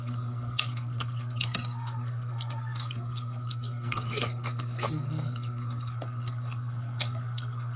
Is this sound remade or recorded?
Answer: remade